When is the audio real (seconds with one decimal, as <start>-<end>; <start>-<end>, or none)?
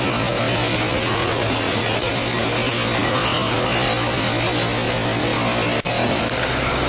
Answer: 0.0-0.9; 2.1-6.9